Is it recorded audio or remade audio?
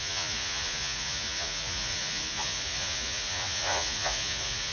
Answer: remade